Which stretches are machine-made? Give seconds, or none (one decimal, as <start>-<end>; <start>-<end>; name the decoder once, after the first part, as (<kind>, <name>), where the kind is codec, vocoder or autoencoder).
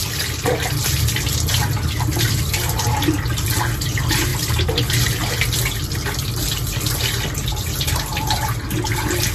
none